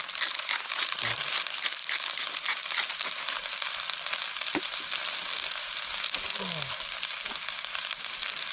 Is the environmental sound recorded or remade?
recorded